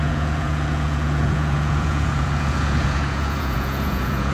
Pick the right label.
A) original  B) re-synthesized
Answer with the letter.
B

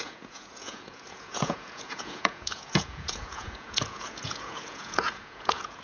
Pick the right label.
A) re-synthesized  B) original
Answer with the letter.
A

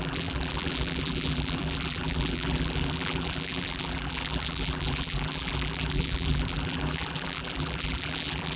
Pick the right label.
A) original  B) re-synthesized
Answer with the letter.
B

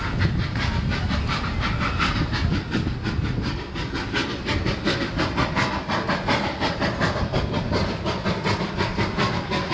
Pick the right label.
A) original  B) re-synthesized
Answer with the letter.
A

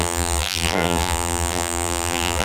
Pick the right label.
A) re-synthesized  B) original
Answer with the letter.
A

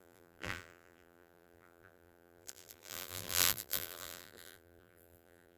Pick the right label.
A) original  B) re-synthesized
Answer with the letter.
B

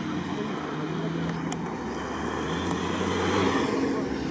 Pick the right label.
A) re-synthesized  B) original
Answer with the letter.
B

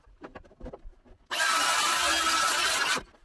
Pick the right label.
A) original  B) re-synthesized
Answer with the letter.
A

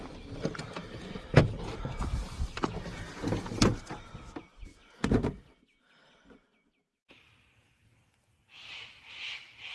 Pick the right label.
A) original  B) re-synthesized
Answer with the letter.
A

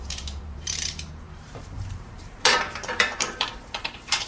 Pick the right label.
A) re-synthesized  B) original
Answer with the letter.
A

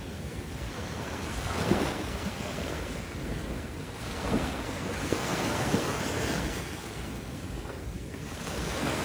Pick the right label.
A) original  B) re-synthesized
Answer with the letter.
B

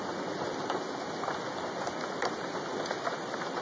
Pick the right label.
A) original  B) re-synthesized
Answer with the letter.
A